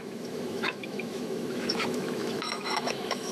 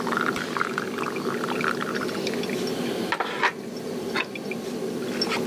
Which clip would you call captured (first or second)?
second